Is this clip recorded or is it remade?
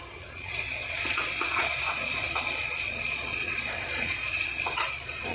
remade